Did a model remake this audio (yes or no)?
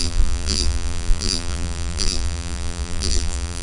yes